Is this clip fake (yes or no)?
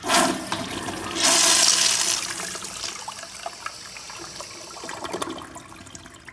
no